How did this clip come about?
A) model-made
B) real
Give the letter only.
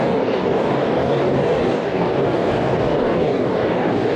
A